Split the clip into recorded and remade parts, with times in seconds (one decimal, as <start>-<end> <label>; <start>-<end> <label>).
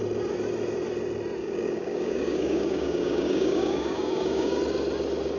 0.0-1.4 recorded; 1.4-4.6 remade; 4.6-5.4 recorded